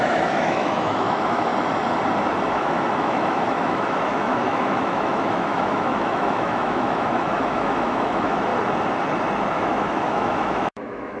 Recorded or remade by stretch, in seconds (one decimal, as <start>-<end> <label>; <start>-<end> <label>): 0.0-1.5 remade; 1.5-2.5 recorded; 2.5-8.5 remade; 8.5-9.5 recorded; 9.5-11.2 remade